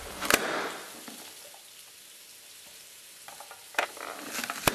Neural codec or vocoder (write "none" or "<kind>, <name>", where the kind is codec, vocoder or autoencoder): none